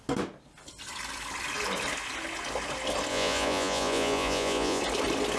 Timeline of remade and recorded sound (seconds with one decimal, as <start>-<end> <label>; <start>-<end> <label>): 0.0-3.1 recorded; 3.1-4.8 remade; 4.8-5.4 recorded